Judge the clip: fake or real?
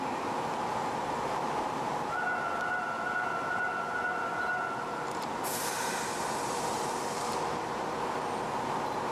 real